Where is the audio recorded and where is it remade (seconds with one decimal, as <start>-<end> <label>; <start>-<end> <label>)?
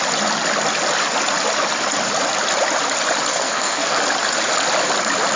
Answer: 0.0-3.3 recorded; 3.3-4.0 remade; 4.0-5.4 recorded